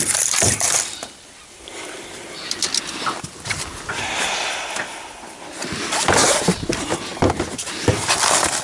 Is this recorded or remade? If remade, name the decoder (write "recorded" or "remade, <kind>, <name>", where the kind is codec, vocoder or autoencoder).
remade, vocoder, BigVGAN v2